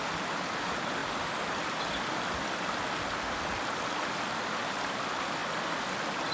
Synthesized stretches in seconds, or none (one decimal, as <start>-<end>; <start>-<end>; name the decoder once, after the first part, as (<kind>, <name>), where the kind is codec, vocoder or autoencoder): none